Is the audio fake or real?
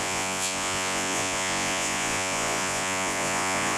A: fake